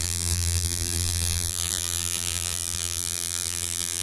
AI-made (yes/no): yes